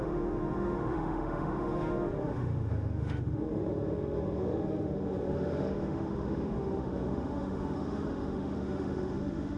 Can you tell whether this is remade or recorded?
remade